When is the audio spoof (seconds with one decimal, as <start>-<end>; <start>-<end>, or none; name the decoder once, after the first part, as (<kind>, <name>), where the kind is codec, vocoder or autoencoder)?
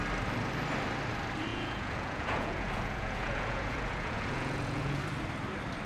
1.5-5.0 (vocoder, Vocos)